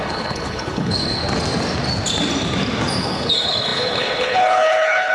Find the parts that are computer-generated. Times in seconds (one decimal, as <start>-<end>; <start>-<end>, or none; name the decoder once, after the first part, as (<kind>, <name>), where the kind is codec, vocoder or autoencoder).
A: 0.0-1.2 (codec, HILCodec); 3.0-5.1